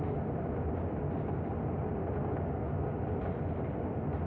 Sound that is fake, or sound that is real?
real